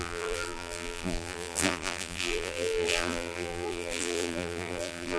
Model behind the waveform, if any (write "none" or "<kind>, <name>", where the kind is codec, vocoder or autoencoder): vocoder, BigVGAN v2